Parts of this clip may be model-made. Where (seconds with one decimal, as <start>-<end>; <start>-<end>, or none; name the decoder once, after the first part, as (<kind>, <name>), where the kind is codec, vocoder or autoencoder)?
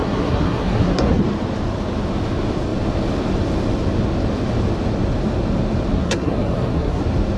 0.0-1.2 (codec, SNAC); 5.9-7.0